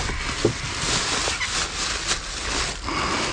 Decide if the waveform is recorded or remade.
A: recorded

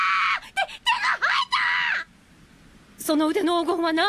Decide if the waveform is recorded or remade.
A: recorded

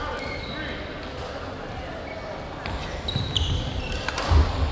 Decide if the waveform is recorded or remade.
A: recorded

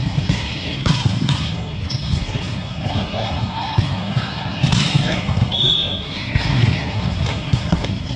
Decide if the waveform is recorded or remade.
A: remade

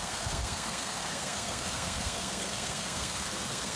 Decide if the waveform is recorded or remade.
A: remade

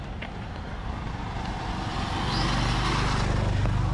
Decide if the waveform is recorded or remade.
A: recorded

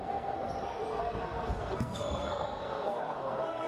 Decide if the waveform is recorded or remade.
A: remade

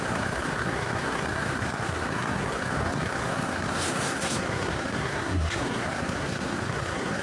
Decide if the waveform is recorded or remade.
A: remade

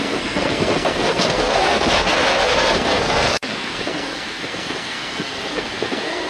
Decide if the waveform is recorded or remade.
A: remade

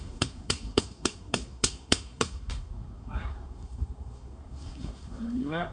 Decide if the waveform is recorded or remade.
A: remade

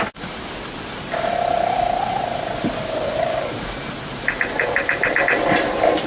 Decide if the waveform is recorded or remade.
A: recorded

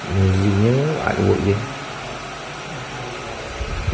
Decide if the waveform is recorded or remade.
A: recorded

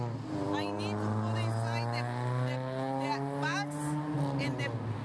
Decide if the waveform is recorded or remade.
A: recorded